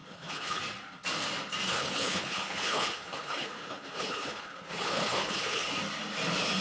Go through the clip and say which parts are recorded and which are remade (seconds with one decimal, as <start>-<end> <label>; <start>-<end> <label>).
0.0-0.6 remade; 0.6-1.7 recorded; 1.7-5.7 remade; 5.7-6.6 recorded